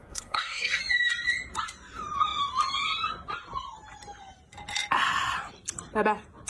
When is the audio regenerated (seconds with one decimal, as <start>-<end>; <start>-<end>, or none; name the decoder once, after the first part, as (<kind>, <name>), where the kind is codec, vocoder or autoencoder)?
0.0-0.8 (codec, SNAC)